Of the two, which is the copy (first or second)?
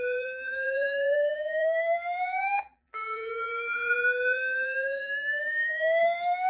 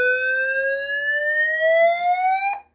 first